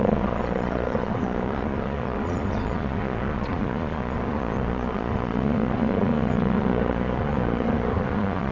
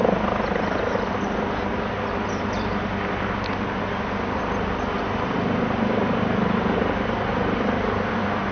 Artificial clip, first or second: first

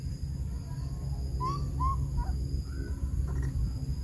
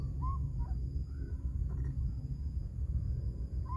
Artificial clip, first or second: second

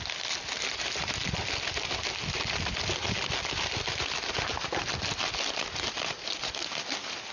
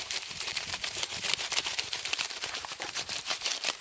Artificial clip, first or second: second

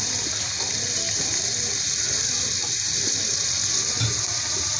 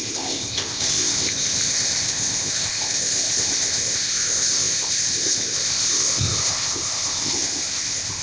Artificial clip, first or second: second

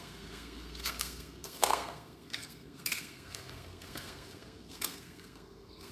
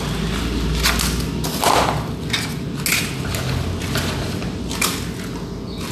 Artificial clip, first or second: first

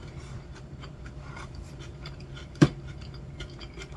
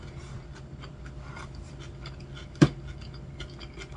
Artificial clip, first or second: first